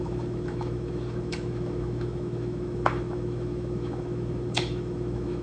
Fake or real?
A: fake